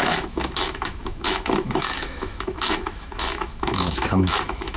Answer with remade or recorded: remade